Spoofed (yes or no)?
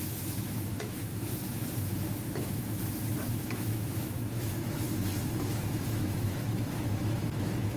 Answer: yes